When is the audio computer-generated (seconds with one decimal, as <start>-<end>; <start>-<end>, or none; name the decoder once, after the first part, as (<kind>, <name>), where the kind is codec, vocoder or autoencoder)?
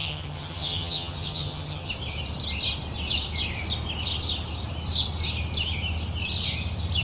0.0-1.9 (vocoder, HiFi-GAN)